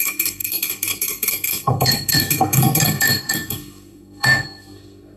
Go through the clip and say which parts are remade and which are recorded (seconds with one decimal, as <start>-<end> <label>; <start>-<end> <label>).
0.0-5.2 remade